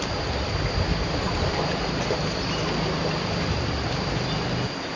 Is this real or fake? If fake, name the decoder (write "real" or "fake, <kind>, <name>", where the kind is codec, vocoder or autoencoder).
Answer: real